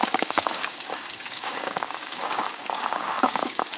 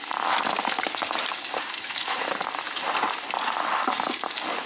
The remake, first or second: first